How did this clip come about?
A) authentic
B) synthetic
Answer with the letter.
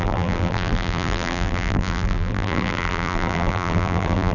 B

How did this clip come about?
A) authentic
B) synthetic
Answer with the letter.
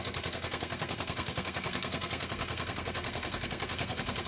B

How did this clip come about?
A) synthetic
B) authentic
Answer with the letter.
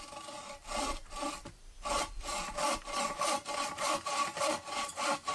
A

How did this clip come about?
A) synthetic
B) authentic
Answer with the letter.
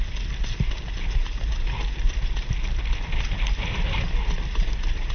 B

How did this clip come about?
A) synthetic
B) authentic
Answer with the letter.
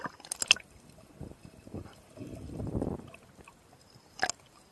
B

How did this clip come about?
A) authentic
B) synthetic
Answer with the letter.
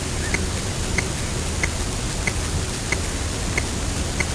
A